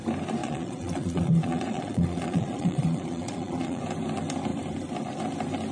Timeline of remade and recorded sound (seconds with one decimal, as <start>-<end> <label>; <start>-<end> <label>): 0.0-0.4 recorded; 0.4-3.8 remade; 3.8-5.7 recorded